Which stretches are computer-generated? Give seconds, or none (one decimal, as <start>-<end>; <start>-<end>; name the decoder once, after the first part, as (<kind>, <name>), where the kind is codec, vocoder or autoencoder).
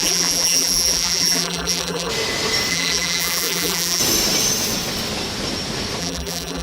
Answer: 0.0-2.1 (vocoder, BigVGAN v2); 2.7-4.0; 6.0-6.6